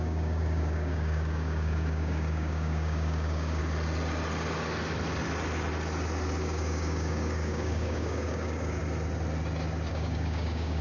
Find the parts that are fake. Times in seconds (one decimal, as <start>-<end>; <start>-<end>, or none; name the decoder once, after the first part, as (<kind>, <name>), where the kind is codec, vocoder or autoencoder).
0.0-3.6 (codec, DAC); 6.4-8.8; 9.9-10.8